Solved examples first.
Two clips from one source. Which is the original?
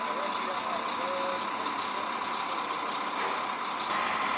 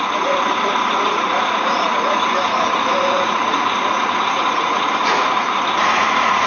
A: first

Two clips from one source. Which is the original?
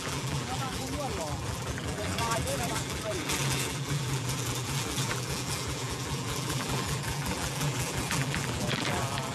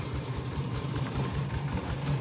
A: second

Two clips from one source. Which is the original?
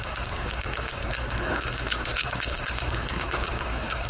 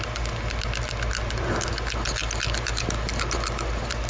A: second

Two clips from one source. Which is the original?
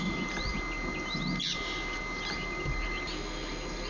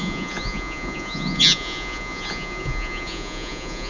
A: first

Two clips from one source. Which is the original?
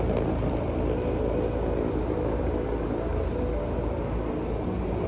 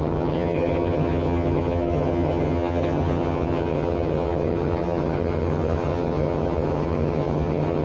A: first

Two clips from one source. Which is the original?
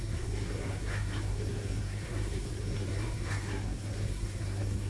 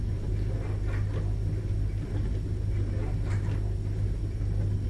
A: second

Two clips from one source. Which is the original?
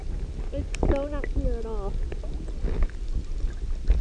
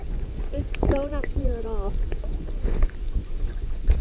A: first